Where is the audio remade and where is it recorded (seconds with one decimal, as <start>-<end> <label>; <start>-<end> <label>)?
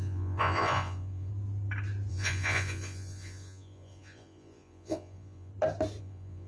0.0-1.3 remade; 1.3-2.1 recorded; 2.1-5.5 remade; 5.5-6.0 recorded; 6.0-6.5 remade